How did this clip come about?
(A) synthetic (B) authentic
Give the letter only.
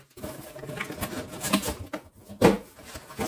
B